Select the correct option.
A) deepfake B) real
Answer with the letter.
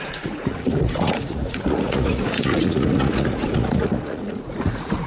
A